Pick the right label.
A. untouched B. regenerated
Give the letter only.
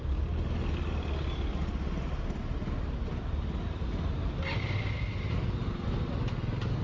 A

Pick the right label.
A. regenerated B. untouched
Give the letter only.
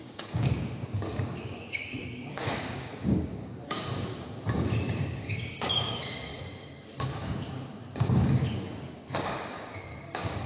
A